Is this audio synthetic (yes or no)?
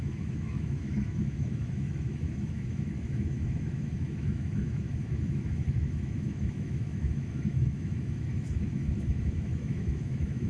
yes